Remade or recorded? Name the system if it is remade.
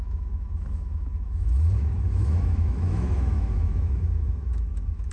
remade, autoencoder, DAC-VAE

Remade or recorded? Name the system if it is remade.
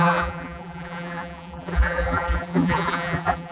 remade, vocoder, BigVGAN v2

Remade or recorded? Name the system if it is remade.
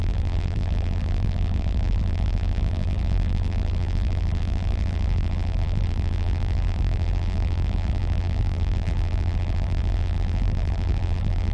remade, vocoder, BigVGAN v2